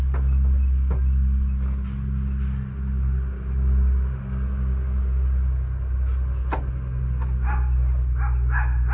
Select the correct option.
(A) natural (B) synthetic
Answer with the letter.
A